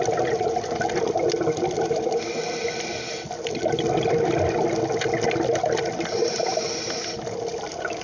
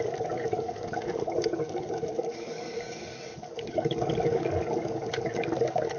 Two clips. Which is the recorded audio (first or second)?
first